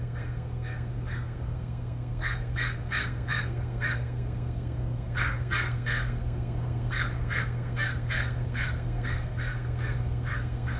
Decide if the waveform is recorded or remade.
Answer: remade